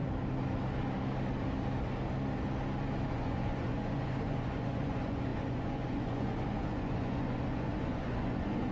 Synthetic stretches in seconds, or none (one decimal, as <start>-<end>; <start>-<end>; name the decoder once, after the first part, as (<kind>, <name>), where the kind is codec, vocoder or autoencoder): 3.1-8.7 (vocoder, Vocos)